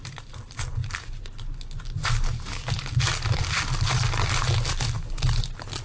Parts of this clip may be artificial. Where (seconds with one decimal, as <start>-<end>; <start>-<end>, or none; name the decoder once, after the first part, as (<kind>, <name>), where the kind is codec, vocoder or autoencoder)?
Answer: none